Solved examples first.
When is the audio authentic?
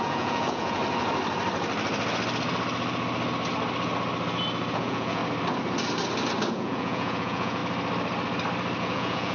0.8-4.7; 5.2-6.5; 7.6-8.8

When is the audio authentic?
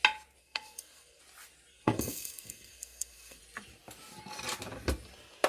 0.0-0.4; 1.2-1.7; 3.4-5.5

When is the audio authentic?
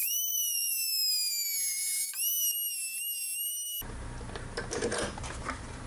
1.1-5.9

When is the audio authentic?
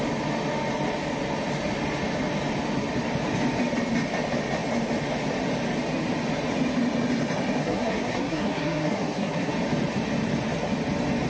0.0-7.6; 9.5-11.3